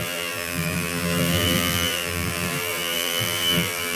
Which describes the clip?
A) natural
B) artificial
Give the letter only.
B